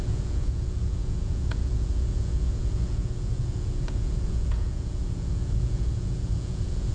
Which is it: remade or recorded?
remade